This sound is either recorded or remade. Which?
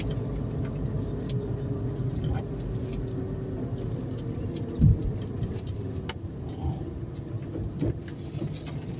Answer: recorded